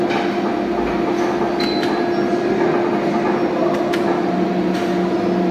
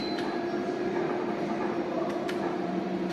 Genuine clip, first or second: first